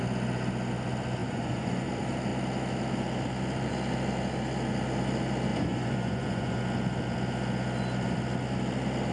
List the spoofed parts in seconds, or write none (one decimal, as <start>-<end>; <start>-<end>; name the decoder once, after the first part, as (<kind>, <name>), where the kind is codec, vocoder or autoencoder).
1.2-1.9 (vocoder, Vocos); 5.5-6.6